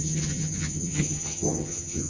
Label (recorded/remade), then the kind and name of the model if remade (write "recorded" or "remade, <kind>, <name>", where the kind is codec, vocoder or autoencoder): remade, vocoder, HiFi-GAN